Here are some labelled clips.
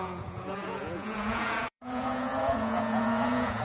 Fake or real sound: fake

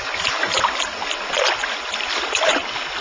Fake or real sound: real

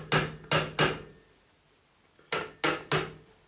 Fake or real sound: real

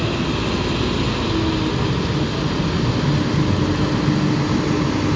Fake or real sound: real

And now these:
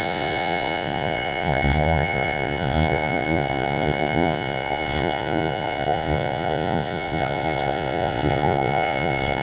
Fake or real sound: fake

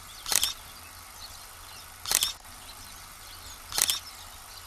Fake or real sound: real